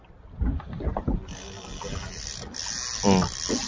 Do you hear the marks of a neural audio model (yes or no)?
no